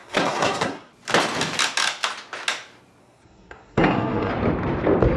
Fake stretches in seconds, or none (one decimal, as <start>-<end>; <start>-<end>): 0.0-0.9; 3.0-4.3